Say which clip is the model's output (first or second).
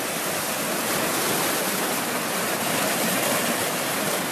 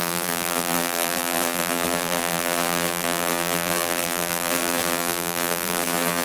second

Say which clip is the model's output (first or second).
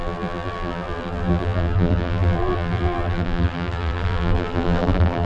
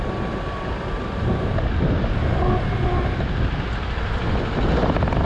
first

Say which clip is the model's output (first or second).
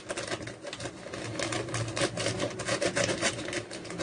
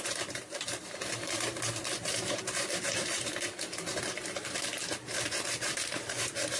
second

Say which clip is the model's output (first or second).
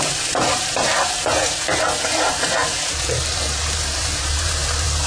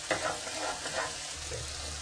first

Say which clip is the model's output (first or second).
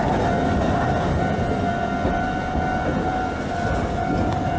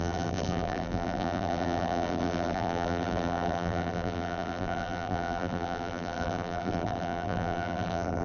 second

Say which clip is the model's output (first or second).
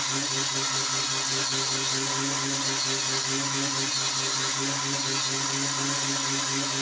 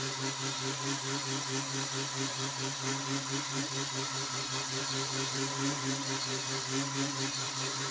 second